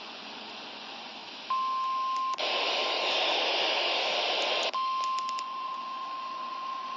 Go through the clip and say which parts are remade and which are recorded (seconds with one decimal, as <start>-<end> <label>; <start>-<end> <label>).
0.0-1.2 remade; 1.2-5.4 recorded; 5.4-7.0 remade

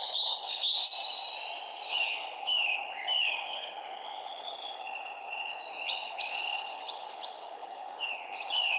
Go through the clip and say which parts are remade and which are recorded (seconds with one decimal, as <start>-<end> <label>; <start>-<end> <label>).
0.0-0.7 remade; 0.7-1.9 recorded; 1.9-8.8 remade

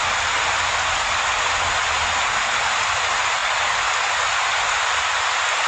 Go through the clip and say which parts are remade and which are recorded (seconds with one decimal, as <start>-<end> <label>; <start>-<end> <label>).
0.0-5.7 recorded